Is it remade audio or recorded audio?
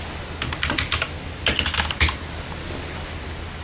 recorded